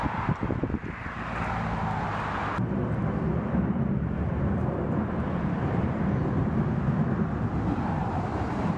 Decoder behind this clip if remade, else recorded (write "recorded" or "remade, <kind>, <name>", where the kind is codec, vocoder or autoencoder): recorded